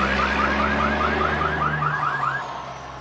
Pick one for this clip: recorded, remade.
recorded